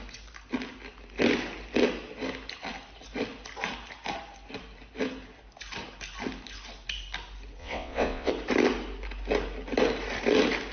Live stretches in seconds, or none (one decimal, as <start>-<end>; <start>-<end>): 0.0-7.6; 8.3-10.7